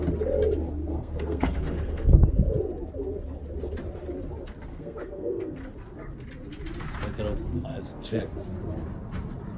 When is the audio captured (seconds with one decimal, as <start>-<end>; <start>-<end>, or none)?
0.0-0.8; 2.3-4.7; 5.6-7.5; 8.2-9.6